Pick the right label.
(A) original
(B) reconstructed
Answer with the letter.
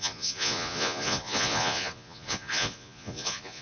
B